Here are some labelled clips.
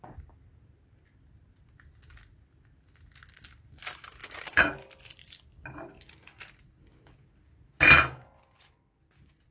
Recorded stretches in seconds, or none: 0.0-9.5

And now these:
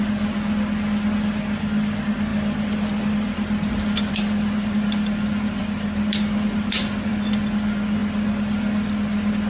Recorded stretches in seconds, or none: 0.0-9.5